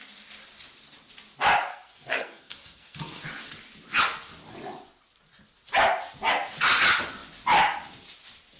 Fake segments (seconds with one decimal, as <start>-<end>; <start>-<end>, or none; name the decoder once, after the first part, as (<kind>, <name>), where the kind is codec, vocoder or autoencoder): 1.7-3.2 (codec, SNAC)